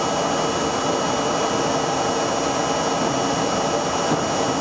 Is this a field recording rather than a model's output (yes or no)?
yes